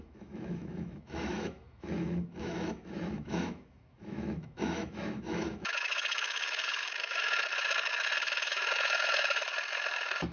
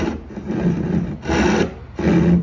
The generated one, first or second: first